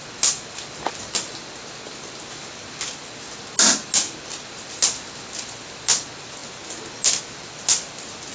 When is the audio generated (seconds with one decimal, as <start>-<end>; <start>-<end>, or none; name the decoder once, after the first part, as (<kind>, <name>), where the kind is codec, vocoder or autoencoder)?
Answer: none